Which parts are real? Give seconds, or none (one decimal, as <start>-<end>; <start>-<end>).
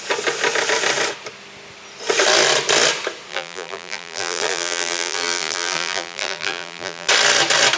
0.0-3.3; 7.1-7.8